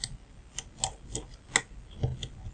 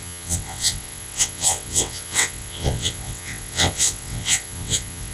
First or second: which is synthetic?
second